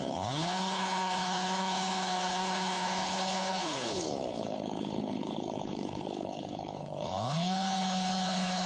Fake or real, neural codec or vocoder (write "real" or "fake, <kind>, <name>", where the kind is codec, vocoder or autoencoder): fake, codec, HILCodec